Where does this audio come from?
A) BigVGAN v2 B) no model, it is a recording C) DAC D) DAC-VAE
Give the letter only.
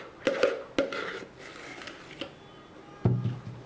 B